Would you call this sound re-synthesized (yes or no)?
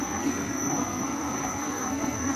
yes